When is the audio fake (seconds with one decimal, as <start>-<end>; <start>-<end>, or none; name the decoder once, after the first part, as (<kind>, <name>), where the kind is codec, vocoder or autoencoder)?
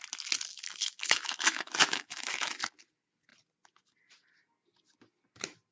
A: 0.5-2.6 (autoencoder, DAC-VAE)